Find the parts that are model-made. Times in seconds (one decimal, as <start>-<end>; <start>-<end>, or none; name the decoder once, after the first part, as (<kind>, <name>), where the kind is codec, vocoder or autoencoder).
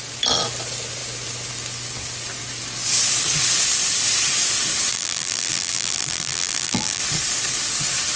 4.9-7.0 (vocoder, BigVGAN v2)